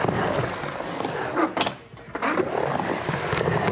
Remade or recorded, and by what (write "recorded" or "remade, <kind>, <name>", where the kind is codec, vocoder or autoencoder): recorded